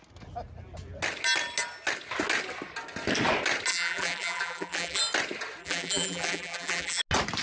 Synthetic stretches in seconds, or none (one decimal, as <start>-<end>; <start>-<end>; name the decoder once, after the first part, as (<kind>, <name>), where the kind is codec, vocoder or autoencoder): 3.7-5.0 (vocoder, BigVGAN v2); 5.6-7.0